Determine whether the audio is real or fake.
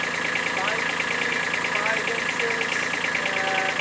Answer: real